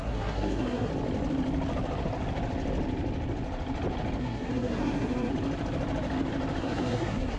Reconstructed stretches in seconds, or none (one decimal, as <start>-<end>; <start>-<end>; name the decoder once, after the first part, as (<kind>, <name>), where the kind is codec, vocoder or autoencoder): 0.0-0.9 (codec, SNAC); 4.2-5.3; 6.6-7.4